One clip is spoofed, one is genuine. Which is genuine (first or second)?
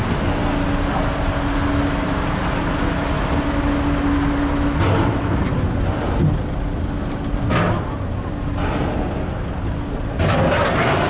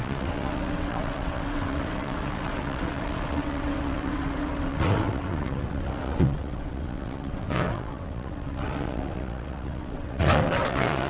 first